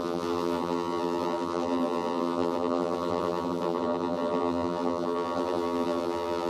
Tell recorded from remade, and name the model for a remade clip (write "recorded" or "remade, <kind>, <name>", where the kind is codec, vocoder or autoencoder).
remade, vocoder, BigVGAN v2